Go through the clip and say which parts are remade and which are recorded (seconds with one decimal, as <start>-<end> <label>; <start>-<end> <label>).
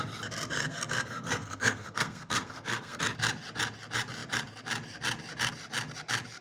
0.0-0.6 recorded; 0.6-3.0 remade; 3.0-6.4 recorded